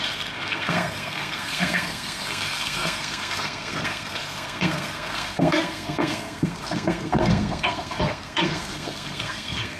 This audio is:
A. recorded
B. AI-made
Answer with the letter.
B